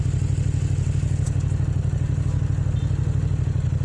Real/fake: real